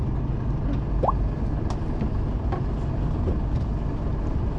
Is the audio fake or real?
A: real